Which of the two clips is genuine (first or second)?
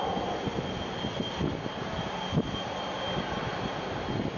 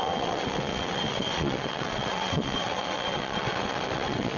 first